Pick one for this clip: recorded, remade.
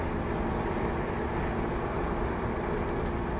recorded